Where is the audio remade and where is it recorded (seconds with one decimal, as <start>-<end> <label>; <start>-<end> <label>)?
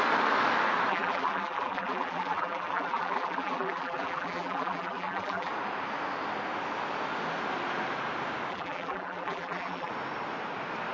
0.0-0.9 recorded; 0.9-5.5 remade; 5.5-8.5 recorded; 8.5-9.9 remade; 9.9-10.9 recorded